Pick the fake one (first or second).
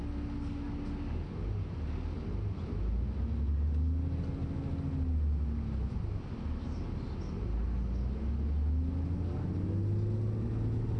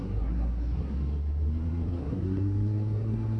second